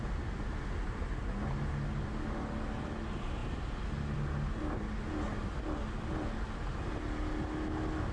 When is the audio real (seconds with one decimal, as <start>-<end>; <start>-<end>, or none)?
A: 0.0-8.1